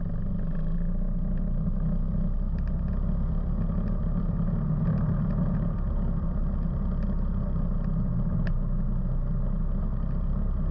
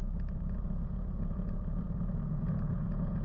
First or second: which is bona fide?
first